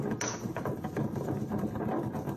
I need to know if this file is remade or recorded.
recorded